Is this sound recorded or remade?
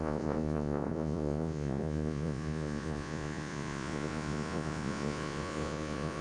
remade